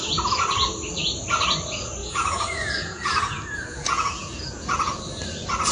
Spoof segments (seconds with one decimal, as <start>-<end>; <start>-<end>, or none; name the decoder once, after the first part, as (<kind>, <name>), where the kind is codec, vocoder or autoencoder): 2.0-5.0 (vocoder, Vocos)